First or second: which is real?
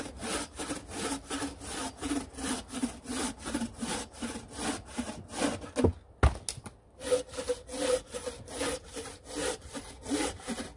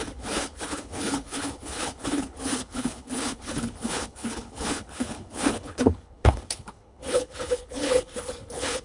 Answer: first